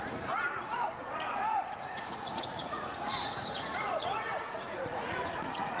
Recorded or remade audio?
remade